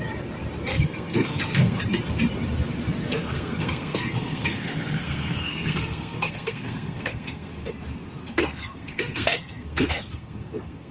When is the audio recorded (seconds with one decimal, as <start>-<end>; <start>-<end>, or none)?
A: 0.0-0.7; 1.8-3.1; 7.5-8.2